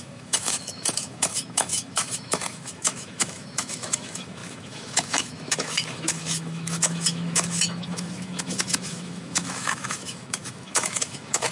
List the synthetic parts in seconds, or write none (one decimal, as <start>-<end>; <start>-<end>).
0.0-11.5